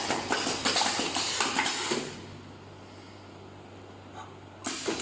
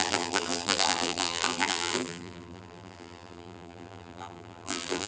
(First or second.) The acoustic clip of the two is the first